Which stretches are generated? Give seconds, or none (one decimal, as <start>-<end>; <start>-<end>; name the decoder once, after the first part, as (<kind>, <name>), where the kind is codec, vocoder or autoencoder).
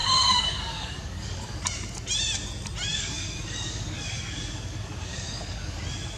0.0-1.6 (codec, DAC); 2.9-5.8